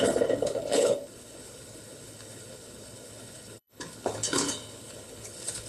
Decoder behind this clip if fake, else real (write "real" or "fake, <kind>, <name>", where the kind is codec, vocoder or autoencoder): fake, codec, HILCodec